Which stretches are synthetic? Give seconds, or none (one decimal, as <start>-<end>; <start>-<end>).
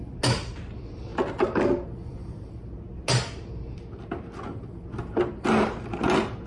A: none